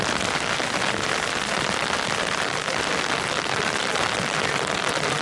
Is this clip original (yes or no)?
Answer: yes